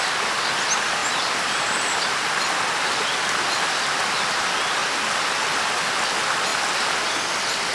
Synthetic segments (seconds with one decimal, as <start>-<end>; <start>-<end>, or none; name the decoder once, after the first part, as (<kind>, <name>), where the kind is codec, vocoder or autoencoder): 1.0-2.0 (vocoder, BigVGAN v2); 4.8-5.7

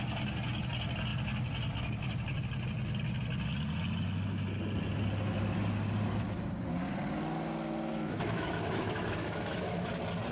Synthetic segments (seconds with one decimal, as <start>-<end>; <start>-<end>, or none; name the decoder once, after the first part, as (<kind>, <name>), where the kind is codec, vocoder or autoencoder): 7.9-9.9 (autoencoder, DAC-VAE)

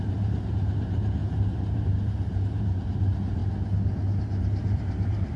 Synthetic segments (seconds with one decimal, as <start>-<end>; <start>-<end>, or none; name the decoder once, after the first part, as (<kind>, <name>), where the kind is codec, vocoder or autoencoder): 0.0-3.4 (vocoder, BigVGAN v2); 4.2-5.4

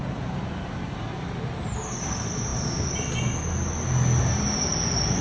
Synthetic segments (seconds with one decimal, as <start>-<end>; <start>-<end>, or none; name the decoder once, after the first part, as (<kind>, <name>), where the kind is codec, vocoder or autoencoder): none

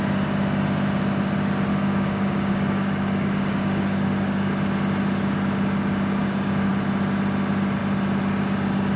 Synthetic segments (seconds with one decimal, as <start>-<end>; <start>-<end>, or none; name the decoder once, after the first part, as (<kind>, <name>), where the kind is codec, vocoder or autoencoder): 1.7-4.5 (codec, DAC); 6.2-6.7